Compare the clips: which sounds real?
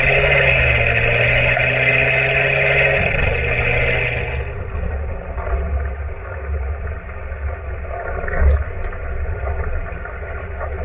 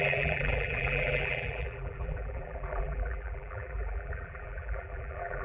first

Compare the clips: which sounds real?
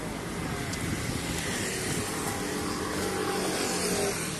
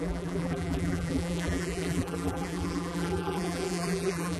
first